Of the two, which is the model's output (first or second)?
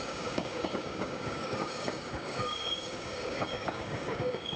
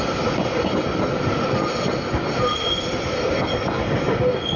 first